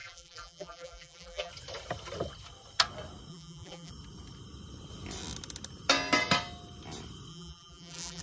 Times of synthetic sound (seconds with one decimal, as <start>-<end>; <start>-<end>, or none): 0.0-1.5; 3.3-3.9; 7.3-8.2